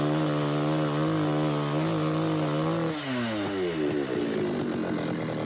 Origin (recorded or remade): recorded